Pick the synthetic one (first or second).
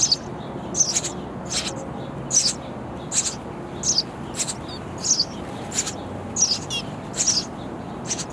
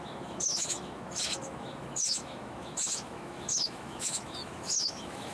second